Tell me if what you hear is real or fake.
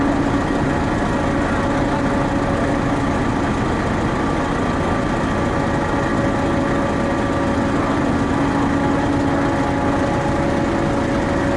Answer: real